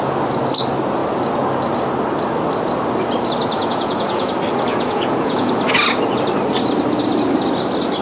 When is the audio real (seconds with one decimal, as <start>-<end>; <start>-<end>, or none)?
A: 0.0-3.6; 4.3-4.7; 5.5-8.0